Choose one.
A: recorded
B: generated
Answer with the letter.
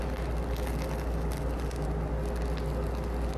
A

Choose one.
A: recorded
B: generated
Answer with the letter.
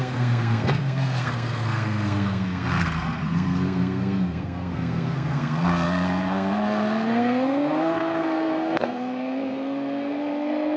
B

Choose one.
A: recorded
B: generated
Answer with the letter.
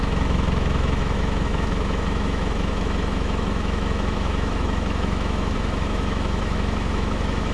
B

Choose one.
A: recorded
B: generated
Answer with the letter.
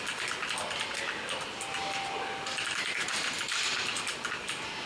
A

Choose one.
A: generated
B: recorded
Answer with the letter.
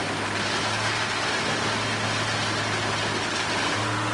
B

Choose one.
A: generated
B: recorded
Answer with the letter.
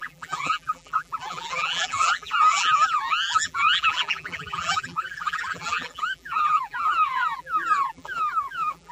A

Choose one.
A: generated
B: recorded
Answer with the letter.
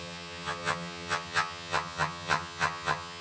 A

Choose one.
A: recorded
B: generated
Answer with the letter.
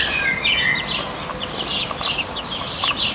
A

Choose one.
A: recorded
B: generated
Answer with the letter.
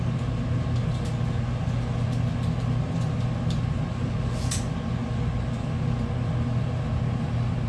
A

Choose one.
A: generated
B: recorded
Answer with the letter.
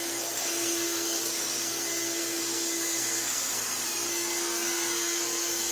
A